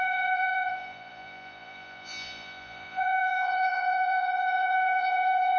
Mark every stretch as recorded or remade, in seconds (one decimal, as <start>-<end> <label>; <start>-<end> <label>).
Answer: 0.0-5.6 remade